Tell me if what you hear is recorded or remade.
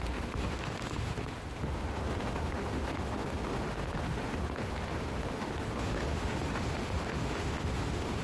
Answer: remade